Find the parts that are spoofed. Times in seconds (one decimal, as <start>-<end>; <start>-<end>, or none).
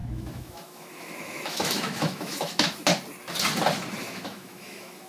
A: 0.0-2.9; 4.0-5.1